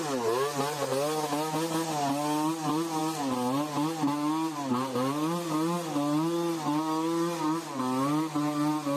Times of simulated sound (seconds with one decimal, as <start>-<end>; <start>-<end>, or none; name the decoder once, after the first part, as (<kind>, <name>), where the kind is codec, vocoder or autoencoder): none